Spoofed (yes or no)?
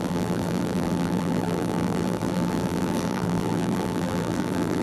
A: yes